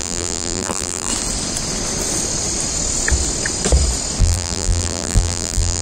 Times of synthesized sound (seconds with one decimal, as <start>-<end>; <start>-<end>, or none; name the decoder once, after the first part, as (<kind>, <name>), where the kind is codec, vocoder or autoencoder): 0.0-1.1 (vocoder, BigVGAN v2); 4.2-5.8